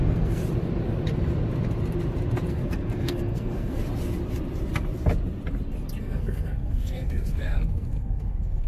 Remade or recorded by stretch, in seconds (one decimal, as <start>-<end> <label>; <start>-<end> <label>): 0.0-0.4 remade; 0.4-2.5 recorded; 2.5-3.8 remade; 3.8-6.0 recorded; 6.0-8.7 remade